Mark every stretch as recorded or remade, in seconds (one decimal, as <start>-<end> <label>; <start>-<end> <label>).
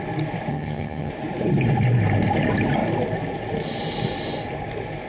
0.0-0.5 recorded; 0.5-1.1 remade; 1.1-5.1 recorded